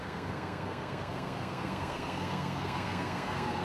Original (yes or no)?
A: no